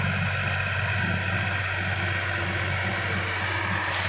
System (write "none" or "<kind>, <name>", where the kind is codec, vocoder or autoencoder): none